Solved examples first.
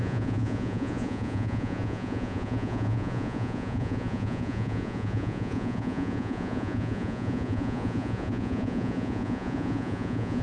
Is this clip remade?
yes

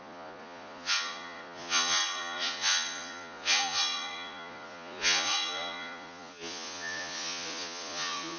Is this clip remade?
yes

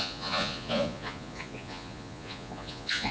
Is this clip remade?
yes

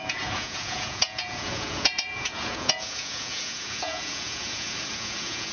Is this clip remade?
yes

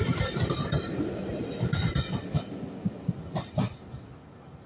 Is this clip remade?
no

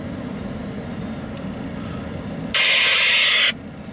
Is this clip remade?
no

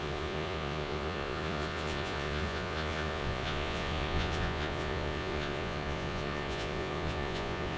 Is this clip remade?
yes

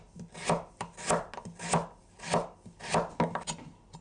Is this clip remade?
no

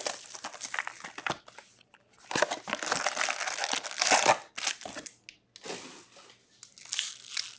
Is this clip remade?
no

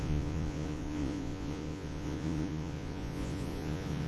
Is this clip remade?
yes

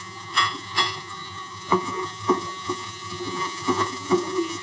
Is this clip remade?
yes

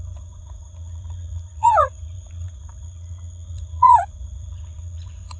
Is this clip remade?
yes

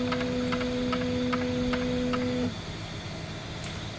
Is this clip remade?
no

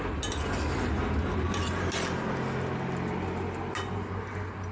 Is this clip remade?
no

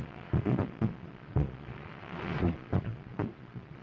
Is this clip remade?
yes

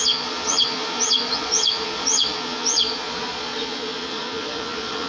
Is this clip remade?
yes